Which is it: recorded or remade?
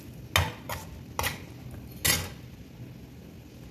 recorded